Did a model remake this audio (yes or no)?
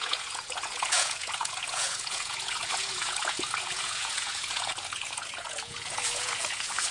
yes